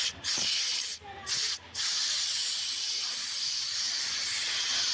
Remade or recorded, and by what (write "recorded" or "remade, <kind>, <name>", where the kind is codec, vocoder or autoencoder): recorded